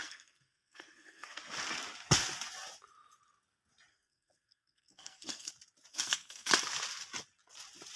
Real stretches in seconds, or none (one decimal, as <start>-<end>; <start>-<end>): 1.4-3.9; 5.5-5.9; 6.5-8.0